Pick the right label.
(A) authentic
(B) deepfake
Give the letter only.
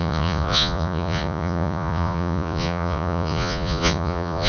B